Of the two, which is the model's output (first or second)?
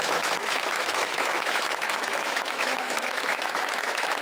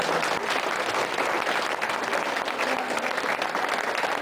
first